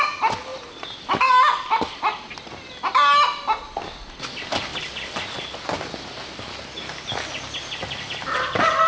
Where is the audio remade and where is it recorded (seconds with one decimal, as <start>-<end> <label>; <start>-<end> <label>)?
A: 0.0-8.9 recorded

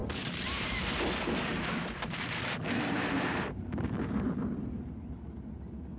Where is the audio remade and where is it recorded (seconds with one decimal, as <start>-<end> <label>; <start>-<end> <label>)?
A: 0.0-0.8 remade; 0.8-1.5 recorded; 1.5-4.9 remade; 4.9-6.0 recorded

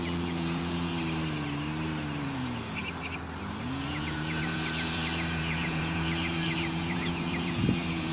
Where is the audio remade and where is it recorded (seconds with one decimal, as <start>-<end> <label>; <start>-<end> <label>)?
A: 0.0-0.9 remade; 0.9-2.2 recorded; 2.2-2.8 remade; 2.8-3.6 recorded; 3.6-8.1 remade

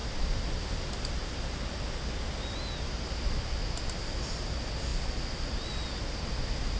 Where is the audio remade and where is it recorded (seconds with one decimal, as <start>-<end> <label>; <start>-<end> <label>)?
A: 0.0-6.8 recorded

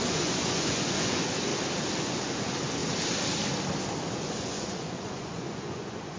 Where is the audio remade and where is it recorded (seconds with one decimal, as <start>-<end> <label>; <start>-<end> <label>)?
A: 0.0-1.5 remade; 1.5-2.0 recorded; 2.0-2.8 remade; 2.8-4.2 recorded; 4.2-6.2 remade

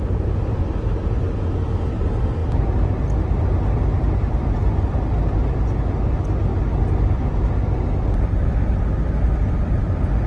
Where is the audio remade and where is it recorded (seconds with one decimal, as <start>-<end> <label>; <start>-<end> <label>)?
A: 0.0-10.3 recorded